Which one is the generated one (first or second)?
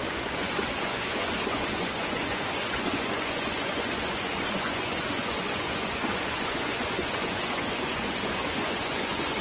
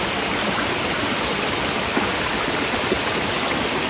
first